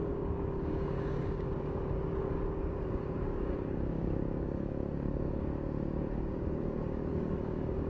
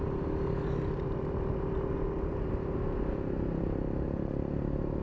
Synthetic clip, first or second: first